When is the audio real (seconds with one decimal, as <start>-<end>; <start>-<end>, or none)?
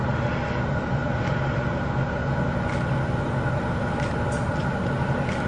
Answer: 0.0-5.5